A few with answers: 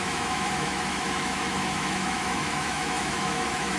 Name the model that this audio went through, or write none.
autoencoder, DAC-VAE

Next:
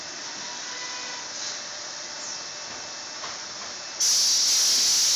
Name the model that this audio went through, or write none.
none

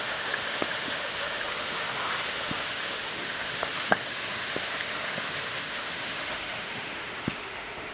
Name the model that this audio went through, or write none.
autoencoder, DAC-VAE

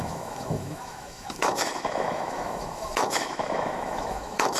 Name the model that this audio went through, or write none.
autoencoder, DAC-VAE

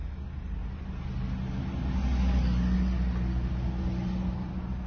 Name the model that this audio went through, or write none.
none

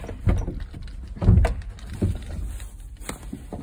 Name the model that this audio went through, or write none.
none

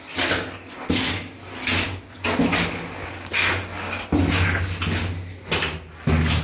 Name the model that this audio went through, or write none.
none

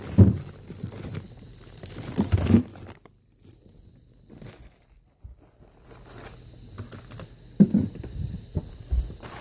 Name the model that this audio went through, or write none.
none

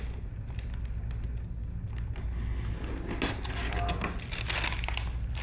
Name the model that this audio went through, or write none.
none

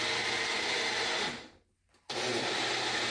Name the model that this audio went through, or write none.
none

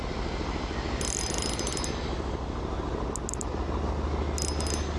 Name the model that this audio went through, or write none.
none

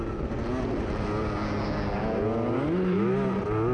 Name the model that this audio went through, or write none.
none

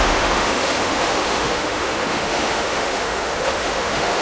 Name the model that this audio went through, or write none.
autoencoder, DAC-VAE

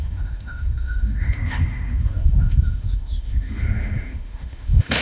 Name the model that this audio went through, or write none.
autoencoder, DAC-VAE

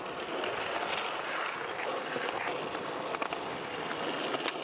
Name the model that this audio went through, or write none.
none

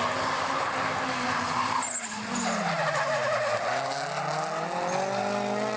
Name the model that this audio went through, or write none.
none